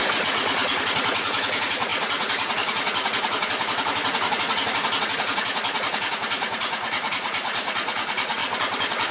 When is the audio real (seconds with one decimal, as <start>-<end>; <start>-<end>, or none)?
8.4-9.1